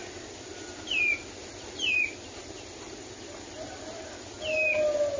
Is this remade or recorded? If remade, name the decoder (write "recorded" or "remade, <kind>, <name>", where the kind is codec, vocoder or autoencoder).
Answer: recorded